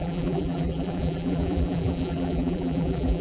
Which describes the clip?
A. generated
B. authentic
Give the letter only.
A